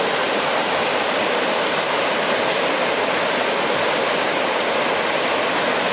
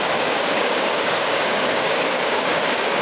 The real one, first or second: first